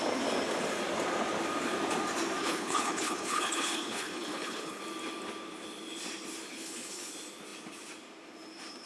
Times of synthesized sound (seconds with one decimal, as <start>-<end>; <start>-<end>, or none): 2.4-4.8; 6.5-7.1